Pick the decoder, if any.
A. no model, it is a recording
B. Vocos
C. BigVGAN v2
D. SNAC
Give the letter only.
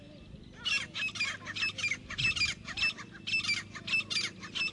A